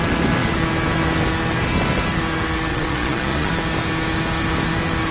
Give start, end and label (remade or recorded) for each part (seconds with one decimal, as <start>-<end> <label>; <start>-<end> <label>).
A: 0.0-2.7 recorded; 2.7-3.5 remade; 3.5-5.1 recorded